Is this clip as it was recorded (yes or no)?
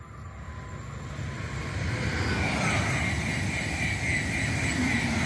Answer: yes